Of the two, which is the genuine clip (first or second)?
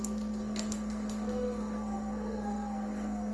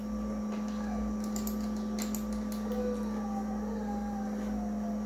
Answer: second